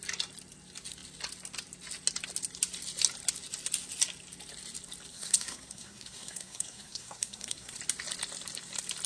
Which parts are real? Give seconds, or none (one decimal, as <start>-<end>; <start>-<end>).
0.0-5.1; 7.8-9.1